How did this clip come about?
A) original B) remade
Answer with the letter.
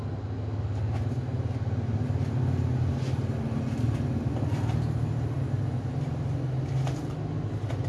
A